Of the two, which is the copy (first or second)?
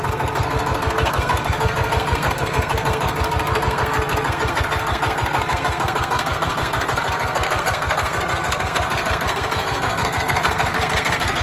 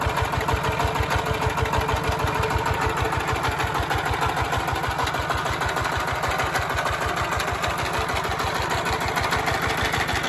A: first